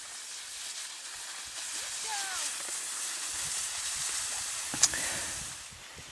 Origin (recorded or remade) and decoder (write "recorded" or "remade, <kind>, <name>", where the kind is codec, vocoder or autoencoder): recorded